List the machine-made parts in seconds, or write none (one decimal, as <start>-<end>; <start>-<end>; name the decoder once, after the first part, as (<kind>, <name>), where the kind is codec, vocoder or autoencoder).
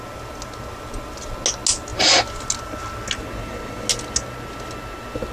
none